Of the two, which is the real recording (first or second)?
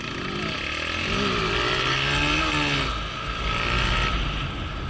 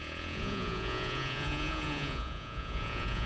first